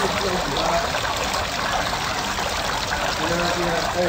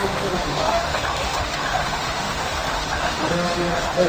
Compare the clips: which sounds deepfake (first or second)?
second